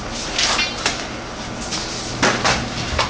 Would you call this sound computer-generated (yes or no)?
no